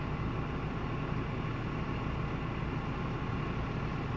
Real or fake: real